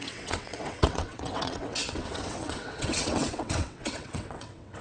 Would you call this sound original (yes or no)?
no